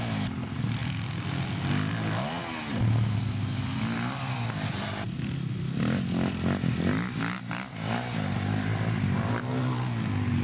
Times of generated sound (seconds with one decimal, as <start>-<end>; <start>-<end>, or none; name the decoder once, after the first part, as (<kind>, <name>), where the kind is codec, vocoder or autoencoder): none